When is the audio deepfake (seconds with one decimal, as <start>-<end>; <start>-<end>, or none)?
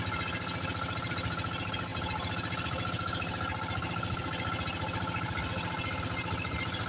none